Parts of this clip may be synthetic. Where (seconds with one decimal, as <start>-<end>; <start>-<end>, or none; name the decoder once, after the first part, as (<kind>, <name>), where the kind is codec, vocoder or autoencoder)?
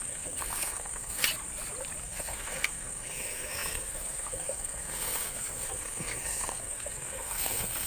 0.0-1.2 (codec, SNAC); 2.0-7.9